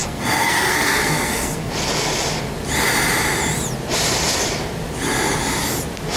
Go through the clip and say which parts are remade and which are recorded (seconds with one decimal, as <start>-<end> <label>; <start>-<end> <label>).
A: 0.0-1.7 remade; 1.7-6.2 recorded